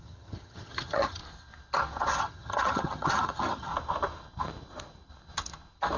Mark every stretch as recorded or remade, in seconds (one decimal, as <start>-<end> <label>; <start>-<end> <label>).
0.0-1.2 remade; 1.2-2.2 recorded; 2.2-3.7 remade; 3.7-6.0 recorded